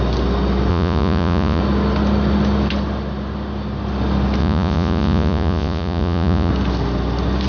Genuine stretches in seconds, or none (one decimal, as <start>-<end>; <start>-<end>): 0.0-0.7; 1.6-4.4; 6.5-7.5